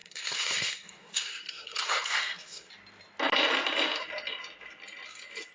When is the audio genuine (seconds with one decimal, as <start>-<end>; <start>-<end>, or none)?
2.7-5.5